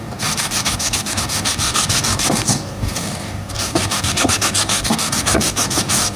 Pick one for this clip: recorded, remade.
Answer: remade